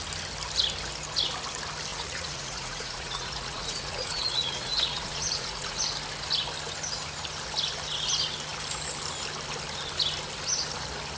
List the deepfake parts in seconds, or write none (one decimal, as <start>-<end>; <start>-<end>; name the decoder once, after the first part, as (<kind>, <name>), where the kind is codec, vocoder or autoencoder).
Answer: 1.9-5.8 (vocoder, Vocos)